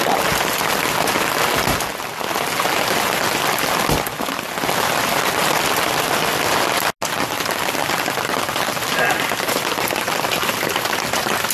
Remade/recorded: recorded